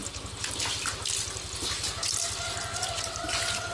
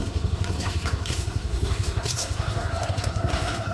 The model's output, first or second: second